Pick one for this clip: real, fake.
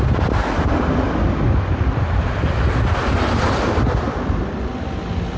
real